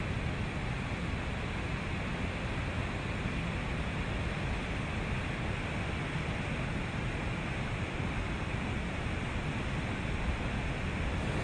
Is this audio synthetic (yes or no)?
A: no